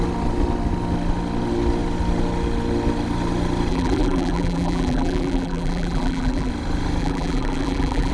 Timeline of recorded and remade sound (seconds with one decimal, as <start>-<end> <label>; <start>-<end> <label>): 0.0-3.7 recorded; 3.7-6.5 remade; 6.5-7.0 recorded; 7.0-8.1 remade